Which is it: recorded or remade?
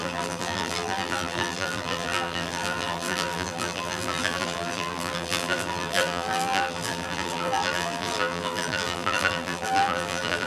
remade